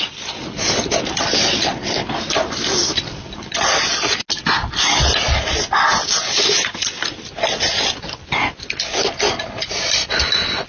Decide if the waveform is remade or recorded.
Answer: recorded